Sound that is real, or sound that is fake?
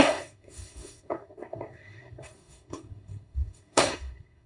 fake